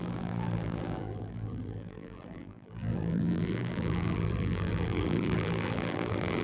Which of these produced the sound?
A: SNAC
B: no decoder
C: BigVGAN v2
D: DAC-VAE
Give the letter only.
C